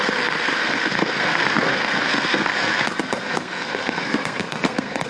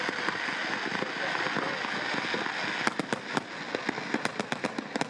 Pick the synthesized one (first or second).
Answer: first